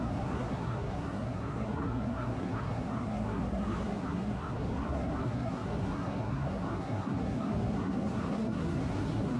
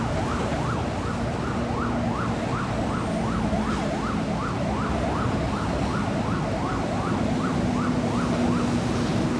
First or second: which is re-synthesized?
first